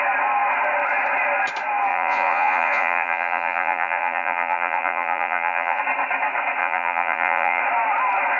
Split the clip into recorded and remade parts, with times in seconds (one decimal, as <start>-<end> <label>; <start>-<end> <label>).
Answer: 0.0-1.9 recorded; 1.9-5.8 remade; 5.8-6.6 recorded; 6.6-7.6 remade; 7.6-8.4 recorded